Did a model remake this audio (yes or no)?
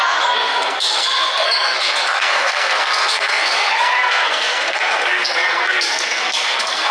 yes